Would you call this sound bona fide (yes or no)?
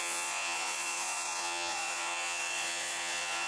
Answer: no